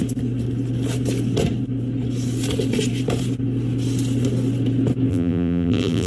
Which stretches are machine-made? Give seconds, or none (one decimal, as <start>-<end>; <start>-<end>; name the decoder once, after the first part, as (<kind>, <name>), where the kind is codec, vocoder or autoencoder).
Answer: 5.1-6.1 (vocoder, BigVGAN v2)